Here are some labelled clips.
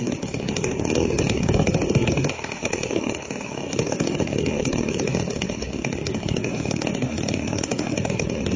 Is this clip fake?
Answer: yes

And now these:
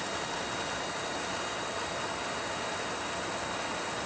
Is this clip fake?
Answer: no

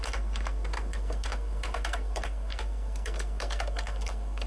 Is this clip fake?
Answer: yes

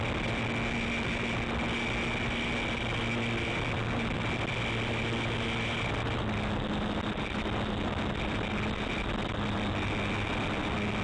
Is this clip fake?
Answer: no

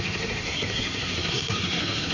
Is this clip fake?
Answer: yes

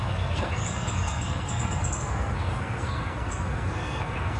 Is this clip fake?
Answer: yes